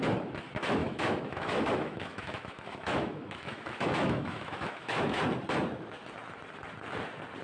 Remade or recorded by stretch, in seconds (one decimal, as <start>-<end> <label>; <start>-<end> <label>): 0.0-0.8 recorded; 0.8-5.2 remade; 5.2-7.4 recorded